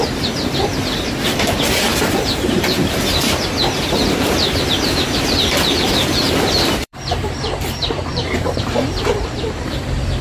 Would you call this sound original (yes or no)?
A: no